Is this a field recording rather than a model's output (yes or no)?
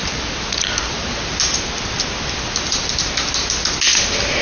yes